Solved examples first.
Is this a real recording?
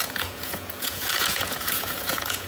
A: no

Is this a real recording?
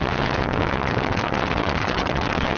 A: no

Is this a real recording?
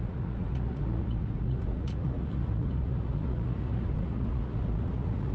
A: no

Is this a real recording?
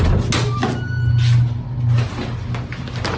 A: yes